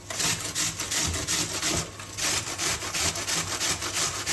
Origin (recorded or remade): recorded